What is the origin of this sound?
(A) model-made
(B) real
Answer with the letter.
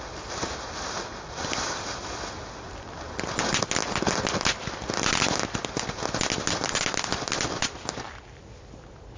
B